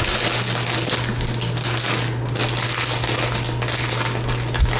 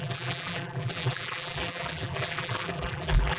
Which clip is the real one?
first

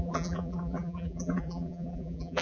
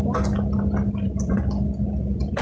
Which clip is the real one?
second